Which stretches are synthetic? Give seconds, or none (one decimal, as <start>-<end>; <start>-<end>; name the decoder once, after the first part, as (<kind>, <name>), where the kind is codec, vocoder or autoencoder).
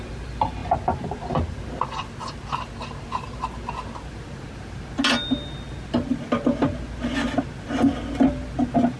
none